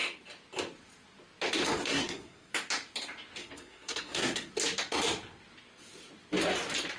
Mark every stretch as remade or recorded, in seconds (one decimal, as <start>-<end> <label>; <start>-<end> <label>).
0.0-1.8 recorded; 1.8-2.5 remade; 2.5-3.4 recorded; 3.4-4.5 remade; 4.5-7.0 recorded